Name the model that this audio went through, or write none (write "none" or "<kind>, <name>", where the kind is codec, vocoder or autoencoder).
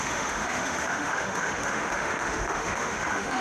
autoencoder, DAC-VAE